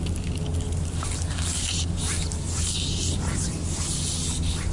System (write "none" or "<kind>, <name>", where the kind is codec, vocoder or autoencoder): none